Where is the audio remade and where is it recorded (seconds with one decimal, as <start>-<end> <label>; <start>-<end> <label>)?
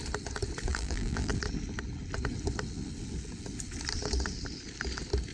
0.0-0.7 recorded; 0.7-1.3 remade; 1.3-5.3 recorded